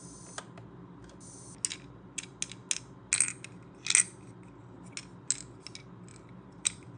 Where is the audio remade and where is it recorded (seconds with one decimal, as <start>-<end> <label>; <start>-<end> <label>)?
0.0-6.1 recorded; 6.1-7.0 remade